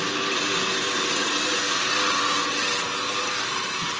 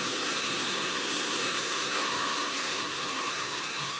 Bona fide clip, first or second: first